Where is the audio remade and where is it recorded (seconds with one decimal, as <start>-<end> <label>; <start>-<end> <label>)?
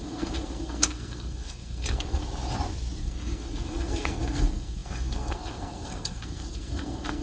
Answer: 0.0-2.2 remade; 2.2-3.0 recorded; 3.0-7.2 remade